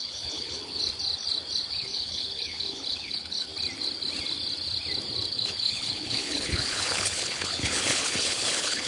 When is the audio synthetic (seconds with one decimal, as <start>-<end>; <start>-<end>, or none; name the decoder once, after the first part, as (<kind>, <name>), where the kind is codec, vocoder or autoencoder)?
0.0-0.8 (codec, HILCodec); 1.7-3.5; 5.3-8.9